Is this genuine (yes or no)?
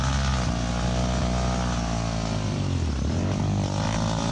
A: yes